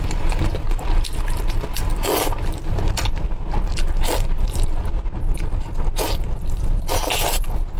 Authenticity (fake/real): real